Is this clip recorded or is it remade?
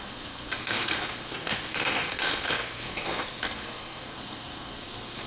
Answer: remade